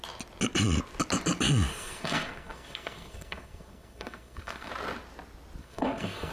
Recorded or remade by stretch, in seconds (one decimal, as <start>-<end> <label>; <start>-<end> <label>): 0.0-1.7 recorded; 1.7-4.7 remade; 4.7-5.6 recorded; 5.6-6.3 remade